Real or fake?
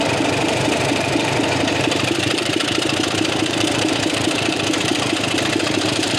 fake